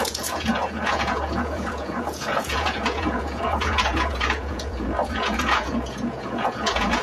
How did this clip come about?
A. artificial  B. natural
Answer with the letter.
A